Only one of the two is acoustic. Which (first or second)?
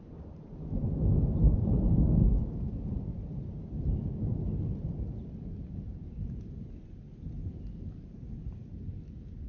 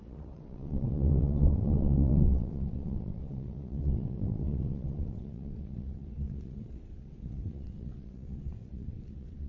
first